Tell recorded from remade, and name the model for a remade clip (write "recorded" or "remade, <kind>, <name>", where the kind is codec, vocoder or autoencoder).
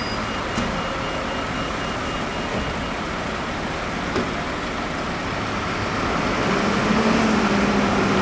recorded